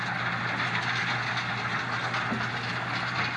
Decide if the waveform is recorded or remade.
recorded